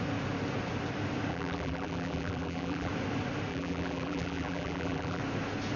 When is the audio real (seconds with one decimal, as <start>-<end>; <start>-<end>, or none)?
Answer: 0.0-1.3; 2.9-3.5; 5.2-5.8